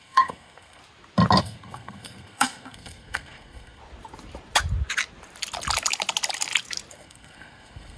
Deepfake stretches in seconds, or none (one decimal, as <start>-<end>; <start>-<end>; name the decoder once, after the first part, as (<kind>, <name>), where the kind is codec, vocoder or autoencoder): 0.0-0.8 (codec, SNAC); 1.4-3.8; 6.9-8.0